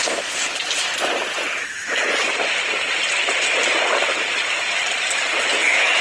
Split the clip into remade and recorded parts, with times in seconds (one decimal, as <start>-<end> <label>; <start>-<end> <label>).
0.0-1.6 recorded; 1.6-2.0 remade; 2.0-5.6 recorded; 5.6-6.0 remade